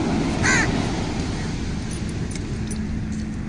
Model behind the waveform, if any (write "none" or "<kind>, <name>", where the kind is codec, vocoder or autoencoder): none